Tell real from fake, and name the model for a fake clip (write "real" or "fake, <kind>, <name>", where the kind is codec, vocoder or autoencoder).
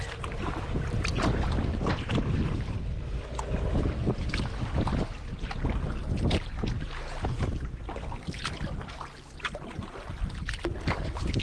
real